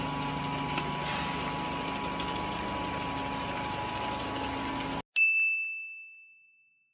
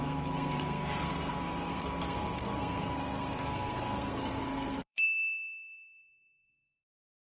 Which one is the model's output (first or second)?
second